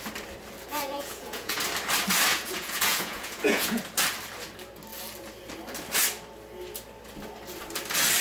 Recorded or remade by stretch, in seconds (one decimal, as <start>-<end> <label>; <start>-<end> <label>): 0.0-0.7 recorded; 0.7-1.6 remade; 1.6-2.3 recorded; 2.3-3.8 remade; 3.8-8.2 recorded